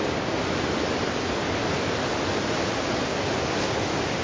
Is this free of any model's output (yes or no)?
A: yes